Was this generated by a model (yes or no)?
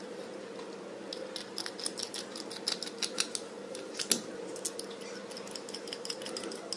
no